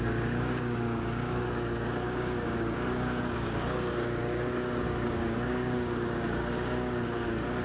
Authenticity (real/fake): fake